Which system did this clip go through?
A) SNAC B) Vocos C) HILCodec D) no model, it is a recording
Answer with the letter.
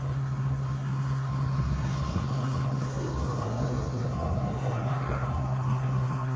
A